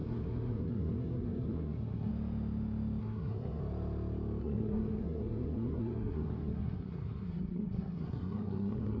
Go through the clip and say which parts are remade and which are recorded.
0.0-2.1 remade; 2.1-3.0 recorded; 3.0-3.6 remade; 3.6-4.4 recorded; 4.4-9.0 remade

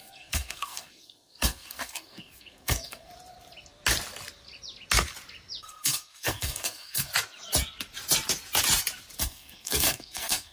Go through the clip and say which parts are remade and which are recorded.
0.0-3.1 remade; 3.1-5.6 recorded; 5.6-7.1 remade; 7.1-9.2 recorded; 9.2-10.5 remade

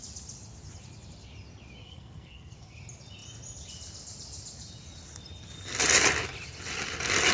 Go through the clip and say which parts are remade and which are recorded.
0.0-1.8 recorded; 1.8-2.8 remade; 2.8-7.3 recorded

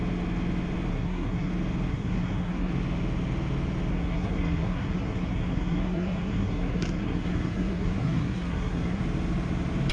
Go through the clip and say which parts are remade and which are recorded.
0.0-0.9 recorded; 0.9-1.5 remade; 1.5-1.9 recorded; 1.9-2.7 remade; 2.7-3.9 recorded; 3.9-9.0 remade; 9.0-9.9 recorded

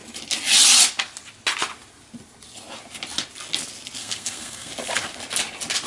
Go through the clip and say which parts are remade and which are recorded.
0.0-4.0 recorded; 4.0-4.7 remade; 4.7-5.9 recorded

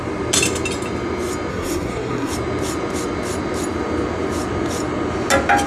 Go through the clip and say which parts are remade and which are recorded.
0.0-1.5 recorded; 1.5-2.3 remade; 2.3-5.7 recorded

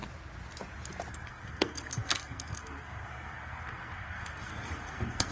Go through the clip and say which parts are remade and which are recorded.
0.0-1.1 recorded; 1.1-5.3 remade